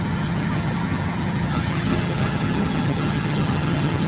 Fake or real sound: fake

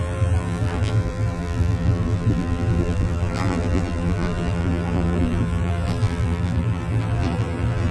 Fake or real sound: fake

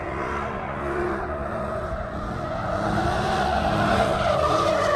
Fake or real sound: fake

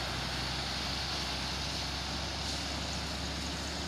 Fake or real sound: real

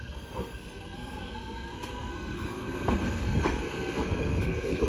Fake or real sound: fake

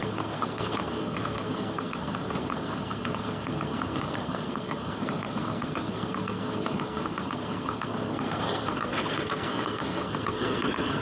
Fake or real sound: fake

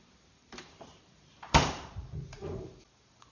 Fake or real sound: fake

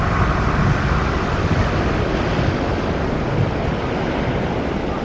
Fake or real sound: real